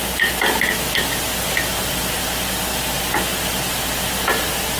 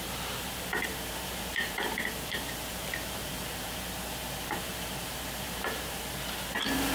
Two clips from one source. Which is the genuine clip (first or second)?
first